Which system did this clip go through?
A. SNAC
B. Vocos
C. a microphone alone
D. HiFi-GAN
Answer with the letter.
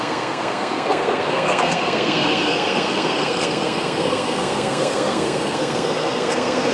A